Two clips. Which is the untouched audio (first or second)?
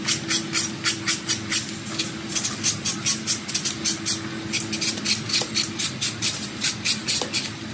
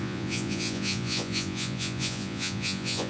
first